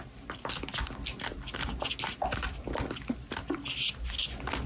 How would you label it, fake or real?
real